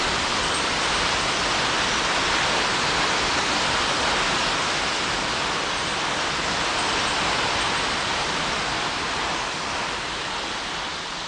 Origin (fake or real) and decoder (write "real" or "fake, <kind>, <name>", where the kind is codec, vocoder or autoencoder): real